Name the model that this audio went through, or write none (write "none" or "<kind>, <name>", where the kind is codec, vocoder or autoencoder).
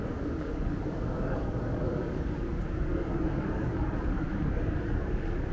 codec, DAC